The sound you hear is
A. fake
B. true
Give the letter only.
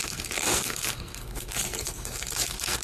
A